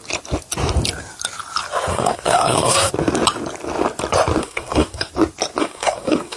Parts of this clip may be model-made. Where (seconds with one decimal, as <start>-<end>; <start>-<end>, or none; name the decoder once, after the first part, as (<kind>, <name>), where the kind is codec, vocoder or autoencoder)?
1.9-2.9 (codec, SNAC); 4.4-5.1; 5.6-6.4